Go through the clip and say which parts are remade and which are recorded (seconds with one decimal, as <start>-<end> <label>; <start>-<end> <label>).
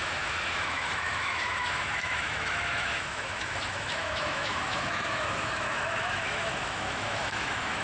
0.0-7.8 remade